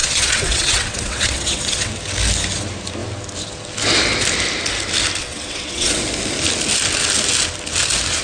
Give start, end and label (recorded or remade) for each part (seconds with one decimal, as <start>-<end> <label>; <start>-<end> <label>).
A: 0.0-1.9 remade; 1.9-5.2 recorded; 5.2-6.0 remade; 6.0-8.2 recorded